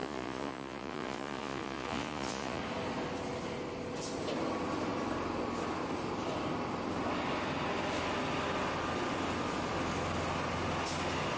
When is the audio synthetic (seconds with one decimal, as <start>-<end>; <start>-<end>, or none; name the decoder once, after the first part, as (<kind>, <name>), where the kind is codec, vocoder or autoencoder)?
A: 0.0-2.6 (vocoder, Vocos)